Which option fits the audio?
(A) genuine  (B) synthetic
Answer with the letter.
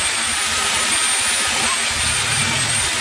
A